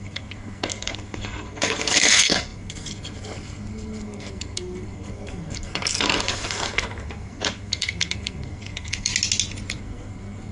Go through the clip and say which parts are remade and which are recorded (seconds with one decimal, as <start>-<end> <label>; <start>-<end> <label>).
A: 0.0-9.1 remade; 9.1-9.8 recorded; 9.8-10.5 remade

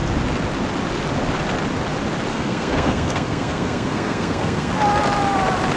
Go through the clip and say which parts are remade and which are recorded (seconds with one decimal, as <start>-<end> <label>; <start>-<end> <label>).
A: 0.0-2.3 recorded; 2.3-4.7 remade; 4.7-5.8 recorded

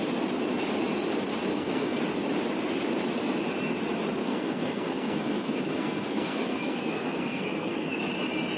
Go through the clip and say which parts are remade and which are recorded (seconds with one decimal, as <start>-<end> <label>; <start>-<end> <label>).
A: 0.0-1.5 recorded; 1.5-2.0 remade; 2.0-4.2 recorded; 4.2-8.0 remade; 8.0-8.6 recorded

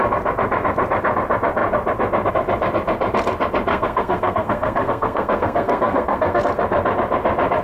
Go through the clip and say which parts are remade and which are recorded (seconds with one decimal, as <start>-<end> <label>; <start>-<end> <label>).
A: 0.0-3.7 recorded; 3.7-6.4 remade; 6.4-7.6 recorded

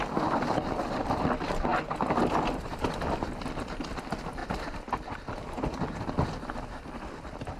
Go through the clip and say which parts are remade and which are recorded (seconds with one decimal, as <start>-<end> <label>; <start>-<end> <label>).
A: 0.0-7.6 recorded

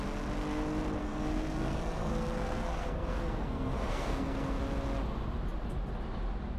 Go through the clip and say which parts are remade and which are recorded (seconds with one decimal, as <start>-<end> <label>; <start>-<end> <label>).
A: 0.0-1.0 recorded; 1.0-4.6 remade; 4.6-6.6 recorded

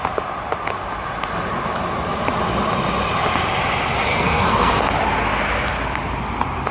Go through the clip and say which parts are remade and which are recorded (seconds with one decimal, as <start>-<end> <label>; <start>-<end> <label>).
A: 0.0-4.1 recorded; 4.1-4.8 remade; 4.8-6.7 recorded